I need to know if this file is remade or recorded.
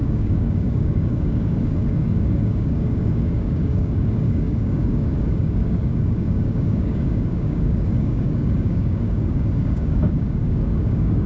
remade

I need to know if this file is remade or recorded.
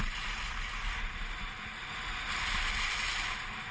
recorded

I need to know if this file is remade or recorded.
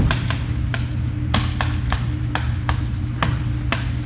recorded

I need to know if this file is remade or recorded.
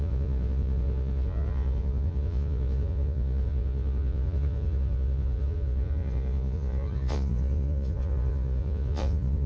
remade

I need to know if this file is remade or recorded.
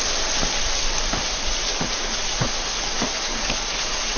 recorded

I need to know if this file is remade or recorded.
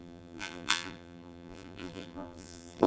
remade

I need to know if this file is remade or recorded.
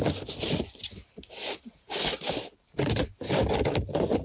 recorded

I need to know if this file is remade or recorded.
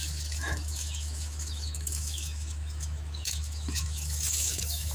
remade